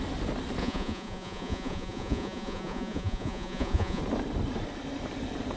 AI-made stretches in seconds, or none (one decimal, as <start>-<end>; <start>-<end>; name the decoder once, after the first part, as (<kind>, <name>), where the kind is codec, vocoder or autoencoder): 0.6-4.0 (vocoder, Vocos)